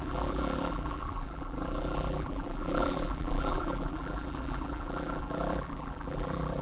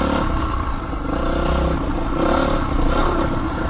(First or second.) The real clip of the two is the second